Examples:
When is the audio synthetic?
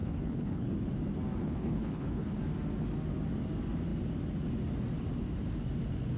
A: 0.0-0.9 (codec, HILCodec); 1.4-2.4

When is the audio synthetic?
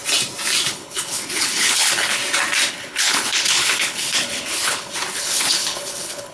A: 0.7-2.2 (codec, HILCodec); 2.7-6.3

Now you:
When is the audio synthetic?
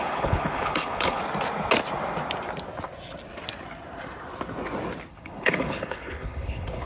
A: 0.0-1.2 (codec, HILCodec); 5.1-6.9